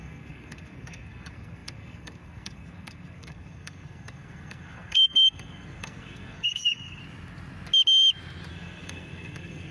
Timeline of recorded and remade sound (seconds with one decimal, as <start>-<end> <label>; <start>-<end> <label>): 0.0-7.0 remade; 7.0-8.5 recorded; 8.5-9.7 remade